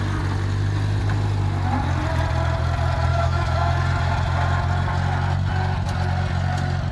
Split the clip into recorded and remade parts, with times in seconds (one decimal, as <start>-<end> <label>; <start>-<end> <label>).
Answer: 0.0-3.1 recorded; 3.1-3.7 remade; 3.7-6.9 recorded